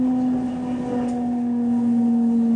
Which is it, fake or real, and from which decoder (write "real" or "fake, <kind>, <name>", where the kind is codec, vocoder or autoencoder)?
real